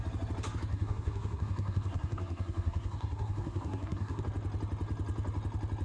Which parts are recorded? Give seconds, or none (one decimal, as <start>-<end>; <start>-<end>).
0.0-0.7; 4.2-5.8